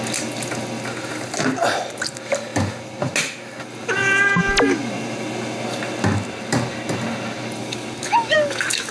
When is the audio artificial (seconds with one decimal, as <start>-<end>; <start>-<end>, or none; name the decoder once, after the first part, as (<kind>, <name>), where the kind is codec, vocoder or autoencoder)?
7.6-8.9 (codec, DAC)